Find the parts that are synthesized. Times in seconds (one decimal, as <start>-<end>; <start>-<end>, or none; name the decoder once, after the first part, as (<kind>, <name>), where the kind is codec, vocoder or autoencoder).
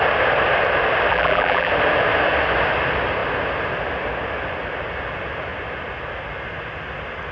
1.1-1.7 (vocoder, BigVGAN v2)